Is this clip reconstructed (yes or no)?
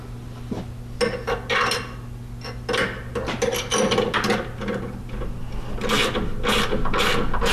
no